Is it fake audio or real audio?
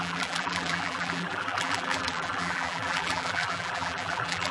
fake